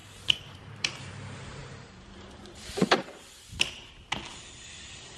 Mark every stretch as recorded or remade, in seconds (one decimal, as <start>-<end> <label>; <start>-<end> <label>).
0.0-1.1 remade; 1.1-1.6 recorded; 1.6-3.4 remade; 3.4-5.2 recorded